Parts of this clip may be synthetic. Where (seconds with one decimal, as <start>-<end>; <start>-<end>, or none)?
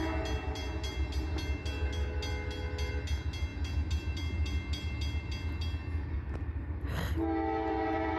none